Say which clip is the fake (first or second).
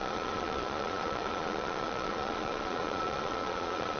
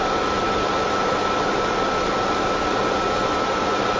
first